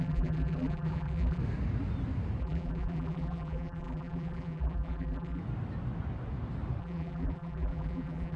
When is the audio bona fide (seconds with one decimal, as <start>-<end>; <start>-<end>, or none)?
1.4-2.4; 5.4-6.8